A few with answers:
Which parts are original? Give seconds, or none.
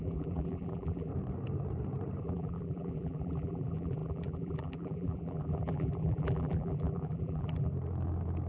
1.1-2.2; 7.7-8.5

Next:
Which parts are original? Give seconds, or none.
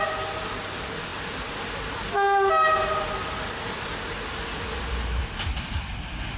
0.0-6.4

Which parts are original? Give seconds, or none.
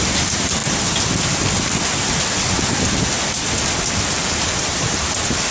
0.6-3.9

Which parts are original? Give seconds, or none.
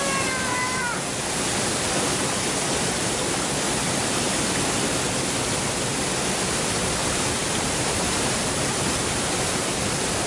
0.0-7.0; 8.4-10.3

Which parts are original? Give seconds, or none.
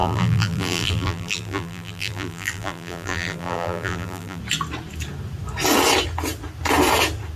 4.4-7.4